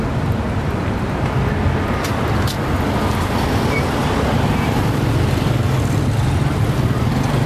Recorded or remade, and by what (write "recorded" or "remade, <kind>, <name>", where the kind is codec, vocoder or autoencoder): recorded